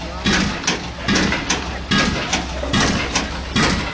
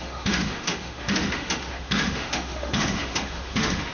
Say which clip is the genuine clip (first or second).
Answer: first